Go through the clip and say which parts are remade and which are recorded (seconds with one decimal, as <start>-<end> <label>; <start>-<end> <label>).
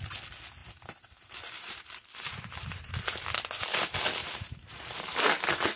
0.0-0.6 recorded; 0.6-2.9 remade; 2.9-4.2 recorded; 4.2-5.8 remade